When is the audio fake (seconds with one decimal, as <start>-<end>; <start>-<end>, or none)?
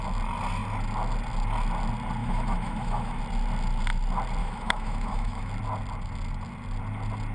2.2-3.2; 4.4-5.5